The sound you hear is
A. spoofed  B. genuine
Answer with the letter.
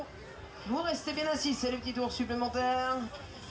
B